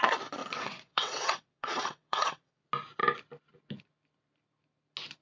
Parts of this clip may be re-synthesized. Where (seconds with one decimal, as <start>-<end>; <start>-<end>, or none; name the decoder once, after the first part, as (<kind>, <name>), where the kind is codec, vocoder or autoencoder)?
0.4-2.6 (vocoder, WaveNeXt)